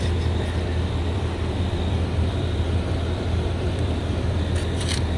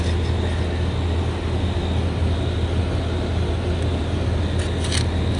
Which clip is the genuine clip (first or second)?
second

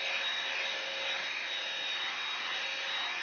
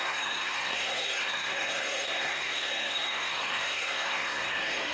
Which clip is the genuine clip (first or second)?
first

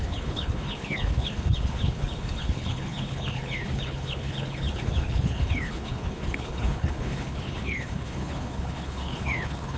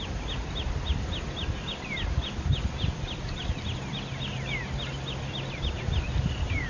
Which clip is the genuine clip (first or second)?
second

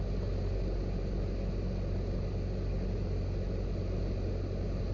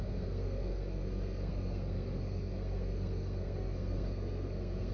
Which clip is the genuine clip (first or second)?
first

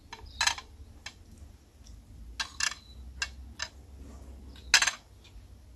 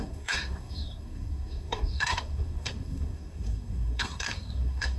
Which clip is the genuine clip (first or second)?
first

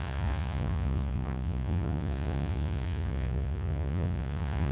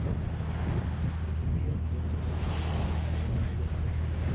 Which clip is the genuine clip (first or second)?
second